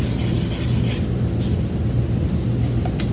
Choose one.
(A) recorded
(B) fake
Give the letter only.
A